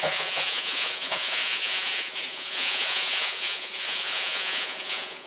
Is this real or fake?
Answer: fake